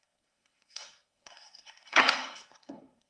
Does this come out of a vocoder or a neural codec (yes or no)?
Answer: yes